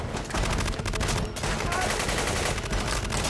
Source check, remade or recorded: recorded